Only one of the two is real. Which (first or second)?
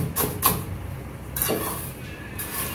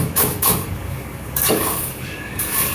first